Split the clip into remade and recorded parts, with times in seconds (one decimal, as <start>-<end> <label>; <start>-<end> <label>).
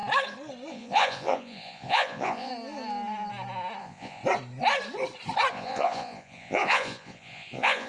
0.0-0.7 recorded; 0.7-2.5 remade; 2.5-3.8 recorded; 3.8-4.2 remade; 4.2-5.5 recorded; 5.5-7.9 remade